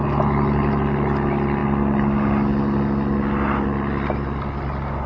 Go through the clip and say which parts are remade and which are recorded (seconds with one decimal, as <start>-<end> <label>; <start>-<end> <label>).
0.0-5.1 recorded